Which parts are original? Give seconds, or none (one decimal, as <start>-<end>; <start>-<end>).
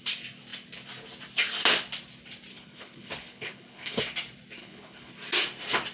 0.0-2.5; 4.0-4.6; 5.1-5.9